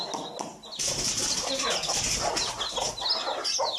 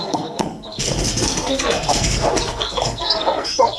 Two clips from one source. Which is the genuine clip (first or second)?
first